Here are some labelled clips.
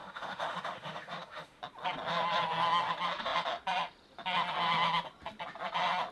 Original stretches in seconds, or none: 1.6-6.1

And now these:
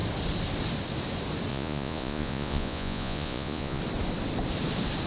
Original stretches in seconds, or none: 0.0-1.5; 3.8-5.1

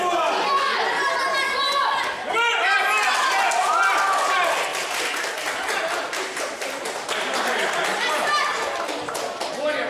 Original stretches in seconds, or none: 0.0-4.7; 9.5-9.9

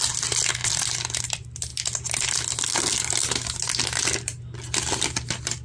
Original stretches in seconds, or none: 0.0-5.6

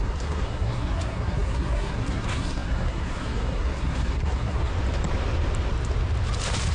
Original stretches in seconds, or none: 4.7-6.7

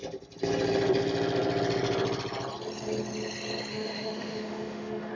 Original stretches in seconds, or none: 0.0-3.7